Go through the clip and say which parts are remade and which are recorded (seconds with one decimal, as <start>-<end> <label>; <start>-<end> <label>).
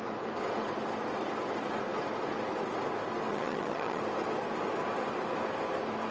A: 0.0-3.3 recorded; 3.3-4.0 remade; 4.0-6.1 recorded